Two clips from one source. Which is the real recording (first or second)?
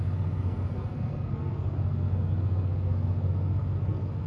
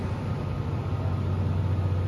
second